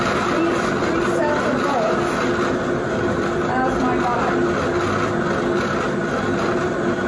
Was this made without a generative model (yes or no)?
yes